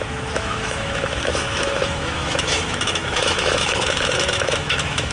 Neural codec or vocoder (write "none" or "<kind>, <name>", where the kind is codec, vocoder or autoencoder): autoencoder, DAC-VAE